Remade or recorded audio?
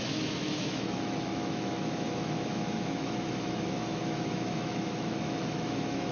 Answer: remade